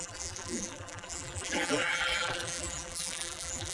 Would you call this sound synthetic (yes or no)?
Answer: yes